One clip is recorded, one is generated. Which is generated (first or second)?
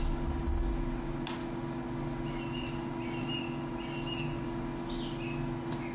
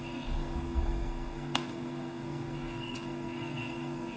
second